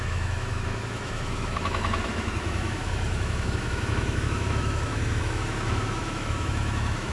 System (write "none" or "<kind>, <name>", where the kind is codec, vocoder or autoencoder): autoencoder, DAC-VAE